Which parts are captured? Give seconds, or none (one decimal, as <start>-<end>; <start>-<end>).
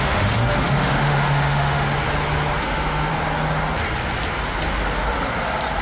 1.9-2.6; 3.1-5.8